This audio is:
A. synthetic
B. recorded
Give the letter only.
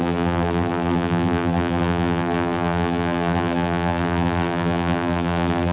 A